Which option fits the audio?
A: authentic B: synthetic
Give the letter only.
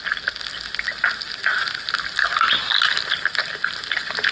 A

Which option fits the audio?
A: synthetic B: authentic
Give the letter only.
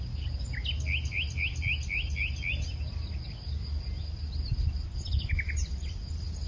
B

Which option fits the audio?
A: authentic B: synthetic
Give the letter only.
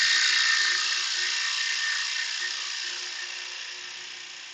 A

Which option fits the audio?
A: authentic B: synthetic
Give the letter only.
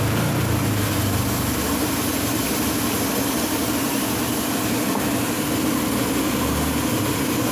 A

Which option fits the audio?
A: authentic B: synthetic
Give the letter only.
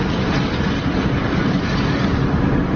A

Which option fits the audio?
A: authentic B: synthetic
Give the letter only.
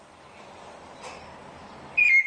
B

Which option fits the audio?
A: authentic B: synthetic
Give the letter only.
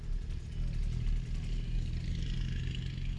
A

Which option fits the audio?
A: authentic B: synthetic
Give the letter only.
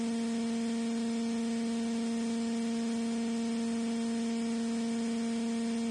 A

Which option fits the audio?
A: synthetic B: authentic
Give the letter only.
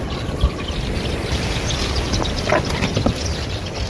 B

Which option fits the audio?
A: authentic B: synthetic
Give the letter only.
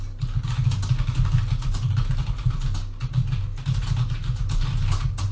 A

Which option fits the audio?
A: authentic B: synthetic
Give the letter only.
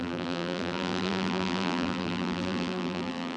B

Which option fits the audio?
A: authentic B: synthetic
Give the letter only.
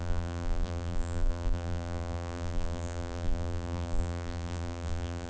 B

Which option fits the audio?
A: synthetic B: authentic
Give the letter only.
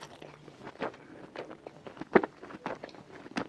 B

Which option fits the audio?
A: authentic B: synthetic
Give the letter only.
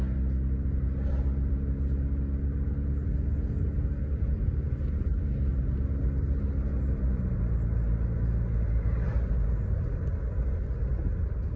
A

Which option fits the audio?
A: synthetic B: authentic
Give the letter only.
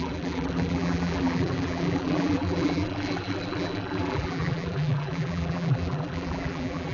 A